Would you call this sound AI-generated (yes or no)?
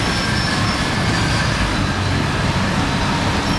no